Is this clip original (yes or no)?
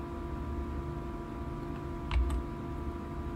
yes